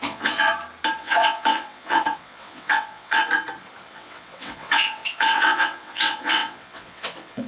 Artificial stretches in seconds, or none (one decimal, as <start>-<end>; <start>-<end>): 0.0-0.5; 1.0-3.2; 3.9-7.5